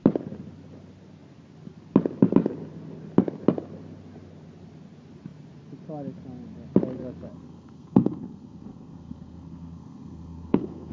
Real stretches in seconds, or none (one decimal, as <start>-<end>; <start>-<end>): 0.0-7.3